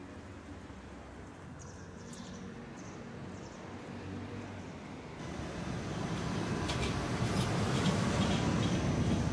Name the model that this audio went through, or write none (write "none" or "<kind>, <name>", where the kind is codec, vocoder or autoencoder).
none